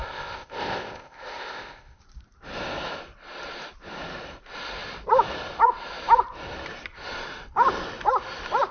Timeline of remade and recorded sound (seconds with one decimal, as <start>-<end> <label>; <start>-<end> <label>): 0.0-2.0 remade; 2.0-8.7 recorded